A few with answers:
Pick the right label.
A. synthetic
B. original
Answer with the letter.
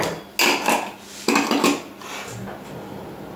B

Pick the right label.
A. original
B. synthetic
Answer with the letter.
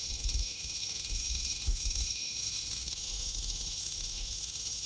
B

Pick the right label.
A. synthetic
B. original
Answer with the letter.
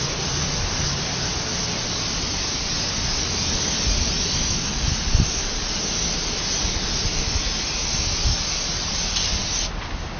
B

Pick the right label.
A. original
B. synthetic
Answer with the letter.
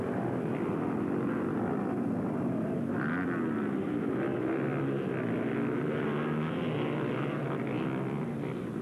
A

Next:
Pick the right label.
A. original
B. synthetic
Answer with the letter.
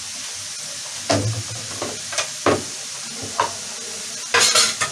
A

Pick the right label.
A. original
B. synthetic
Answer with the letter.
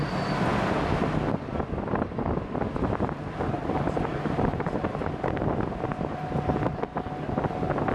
A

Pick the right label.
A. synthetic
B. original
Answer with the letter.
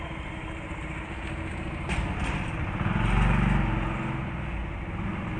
B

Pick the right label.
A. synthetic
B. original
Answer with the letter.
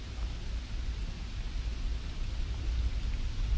B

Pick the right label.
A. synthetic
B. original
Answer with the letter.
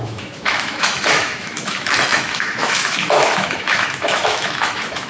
A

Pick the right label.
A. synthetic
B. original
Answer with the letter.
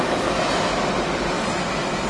B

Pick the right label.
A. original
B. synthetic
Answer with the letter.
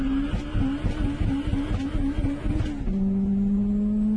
A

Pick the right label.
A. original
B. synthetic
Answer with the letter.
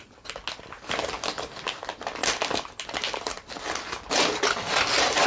A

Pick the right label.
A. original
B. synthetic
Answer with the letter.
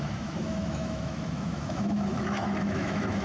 B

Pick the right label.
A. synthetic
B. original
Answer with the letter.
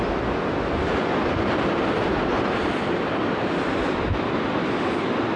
B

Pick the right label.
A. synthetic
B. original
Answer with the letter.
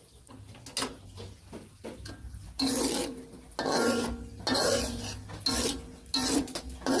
B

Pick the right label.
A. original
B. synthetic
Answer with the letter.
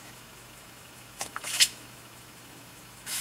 B